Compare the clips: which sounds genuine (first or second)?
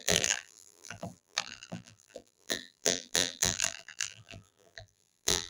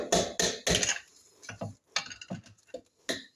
second